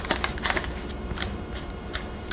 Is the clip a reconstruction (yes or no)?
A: yes